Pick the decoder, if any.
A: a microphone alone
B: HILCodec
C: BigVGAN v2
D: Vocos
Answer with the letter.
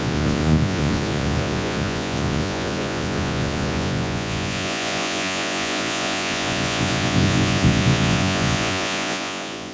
D